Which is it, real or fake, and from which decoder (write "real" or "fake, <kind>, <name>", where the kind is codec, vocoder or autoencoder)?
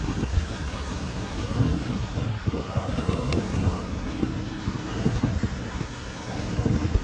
fake, codec, SNAC